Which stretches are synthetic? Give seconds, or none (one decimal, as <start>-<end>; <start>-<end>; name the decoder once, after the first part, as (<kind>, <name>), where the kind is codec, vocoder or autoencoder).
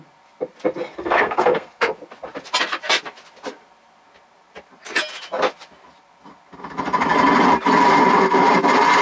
1.0-1.8 (codec, SNAC)